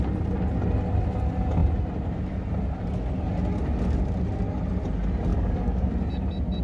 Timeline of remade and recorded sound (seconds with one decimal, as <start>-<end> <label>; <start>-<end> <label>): 0.0-5.3 recorded; 5.3-5.9 remade; 5.9-6.6 recorded